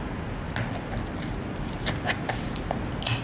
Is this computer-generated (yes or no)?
no